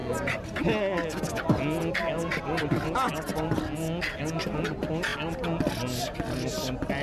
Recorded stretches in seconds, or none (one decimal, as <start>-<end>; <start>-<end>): 0.0-7.0